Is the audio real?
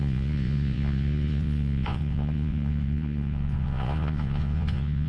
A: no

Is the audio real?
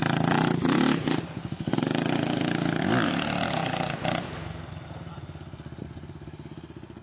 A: yes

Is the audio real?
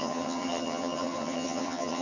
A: no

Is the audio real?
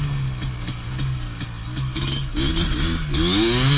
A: yes